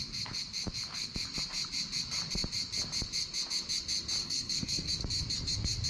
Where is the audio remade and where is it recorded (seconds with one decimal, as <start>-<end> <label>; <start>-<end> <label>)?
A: 0.0-4.2 recorded; 4.2-4.9 remade; 4.9-5.9 recorded